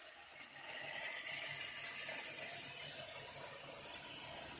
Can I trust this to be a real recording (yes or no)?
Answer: yes